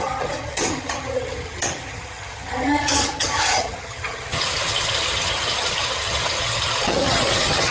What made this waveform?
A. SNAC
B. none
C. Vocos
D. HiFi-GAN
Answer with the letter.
D